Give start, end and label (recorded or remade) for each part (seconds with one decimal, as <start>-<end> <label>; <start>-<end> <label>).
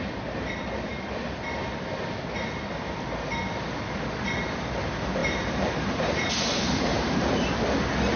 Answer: 0.0-5.2 recorded; 5.2-7.6 remade; 7.6-8.2 recorded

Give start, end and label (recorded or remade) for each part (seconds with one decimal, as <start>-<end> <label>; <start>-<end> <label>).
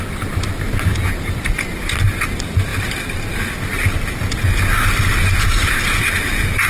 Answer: 0.0-6.0 recorded; 6.0-6.7 remade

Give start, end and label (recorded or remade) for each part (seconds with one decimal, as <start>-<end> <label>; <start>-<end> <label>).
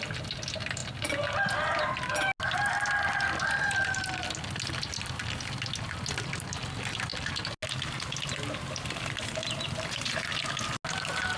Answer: 0.0-11.4 recorded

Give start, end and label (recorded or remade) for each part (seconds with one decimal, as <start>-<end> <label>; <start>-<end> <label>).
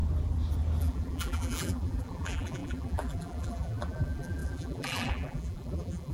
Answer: 0.0-0.8 recorded; 0.8-6.1 remade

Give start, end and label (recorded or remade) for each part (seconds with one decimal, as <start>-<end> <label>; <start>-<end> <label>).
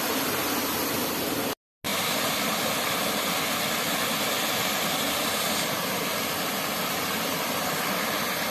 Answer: 0.0-6.1 recorded; 6.1-8.5 remade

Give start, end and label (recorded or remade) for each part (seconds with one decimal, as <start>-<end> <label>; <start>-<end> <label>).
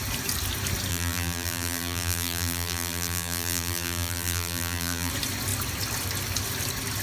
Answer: 0.0-0.9 recorded; 0.9-5.1 remade; 5.1-7.0 recorded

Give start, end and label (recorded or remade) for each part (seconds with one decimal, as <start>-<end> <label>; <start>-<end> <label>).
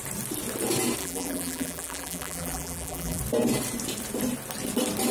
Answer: 0.0-1.0 recorded; 1.0-3.2 remade; 3.2-5.1 recorded